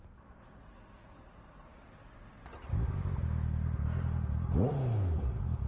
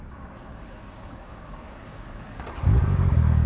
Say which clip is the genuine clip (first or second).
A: first